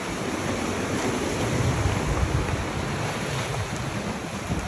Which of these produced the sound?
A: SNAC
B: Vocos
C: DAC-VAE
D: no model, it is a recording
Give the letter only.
D